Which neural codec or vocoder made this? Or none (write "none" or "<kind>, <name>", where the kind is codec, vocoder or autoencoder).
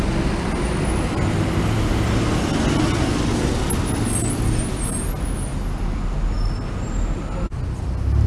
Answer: none